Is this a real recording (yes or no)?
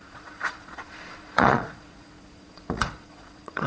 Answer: no